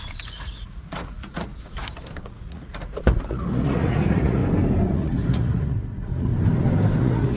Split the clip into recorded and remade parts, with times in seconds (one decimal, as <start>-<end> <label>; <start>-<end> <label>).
0.0-1.5 remade; 1.5-2.2 recorded; 2.2-4.4 remade; 4.4-4.9 recorded; 4.9-6.3 remade; 6.3-7.0 recorded; 7.0-7.4 remade